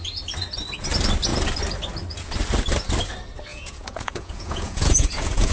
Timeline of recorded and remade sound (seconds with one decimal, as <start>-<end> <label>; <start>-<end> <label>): 0.0-3.5 recorded; 3.5-5.5 remade